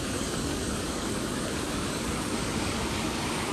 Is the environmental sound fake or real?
fake